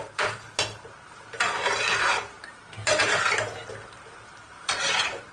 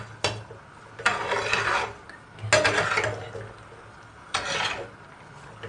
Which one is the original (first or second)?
second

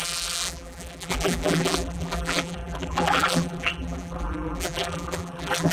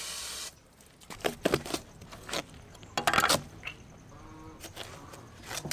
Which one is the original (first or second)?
second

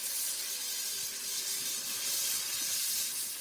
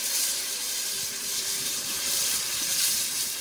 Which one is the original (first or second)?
first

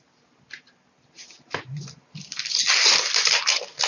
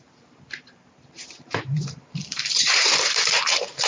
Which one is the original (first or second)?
first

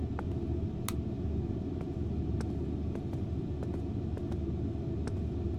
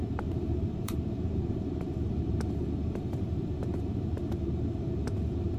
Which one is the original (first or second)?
first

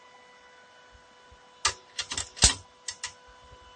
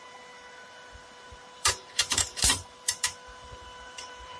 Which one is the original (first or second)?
first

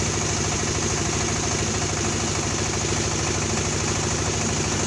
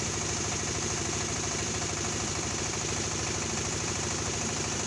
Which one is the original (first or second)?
first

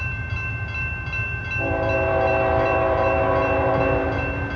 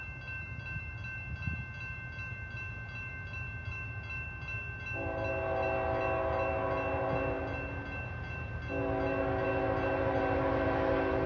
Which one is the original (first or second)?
second